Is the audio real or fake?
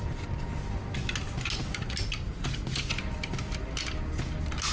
real